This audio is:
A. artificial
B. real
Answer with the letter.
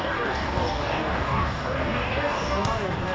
A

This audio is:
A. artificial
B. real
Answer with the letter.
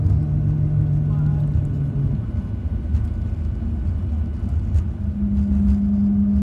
B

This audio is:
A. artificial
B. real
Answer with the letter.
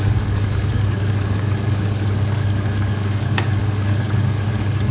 A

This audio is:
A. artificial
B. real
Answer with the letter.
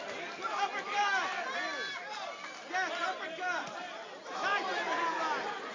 B